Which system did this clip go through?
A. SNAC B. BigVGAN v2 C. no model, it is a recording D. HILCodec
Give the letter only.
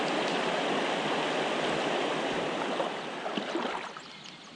C